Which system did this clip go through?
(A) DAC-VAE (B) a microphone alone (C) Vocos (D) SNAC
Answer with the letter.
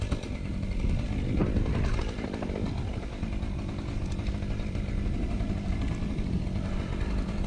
B